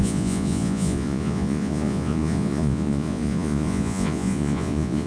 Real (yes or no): no